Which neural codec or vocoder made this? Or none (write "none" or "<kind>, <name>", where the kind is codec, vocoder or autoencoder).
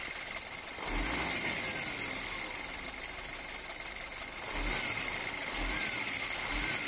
none